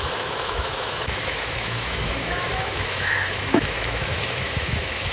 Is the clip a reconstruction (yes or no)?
yes